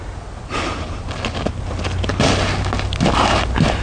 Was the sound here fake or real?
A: real